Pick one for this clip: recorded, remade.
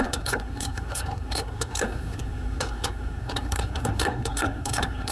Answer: remade